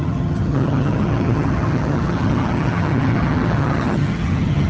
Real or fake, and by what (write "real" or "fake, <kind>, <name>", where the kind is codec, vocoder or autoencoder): fake, vocoder, HiFi-GAN